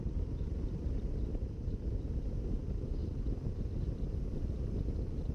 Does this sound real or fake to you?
real